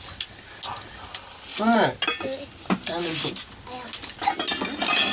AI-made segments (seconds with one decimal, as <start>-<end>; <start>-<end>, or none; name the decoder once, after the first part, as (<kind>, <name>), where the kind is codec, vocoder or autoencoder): none